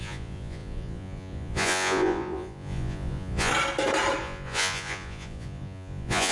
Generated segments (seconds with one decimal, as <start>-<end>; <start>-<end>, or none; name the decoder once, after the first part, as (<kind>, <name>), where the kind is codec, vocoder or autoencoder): 0.0-3.5 (vocoder, Vocos); 4.2-6.3